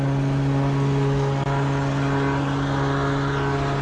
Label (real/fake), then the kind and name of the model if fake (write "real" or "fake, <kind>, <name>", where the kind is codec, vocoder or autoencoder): real